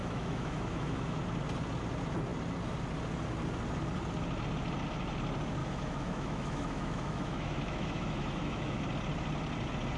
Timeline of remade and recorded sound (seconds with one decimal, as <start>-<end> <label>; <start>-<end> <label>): 0.0-1.2 remade; 1.2-5.6 recorded; 5.6-8.8 remade; 8.8-10.0 recorded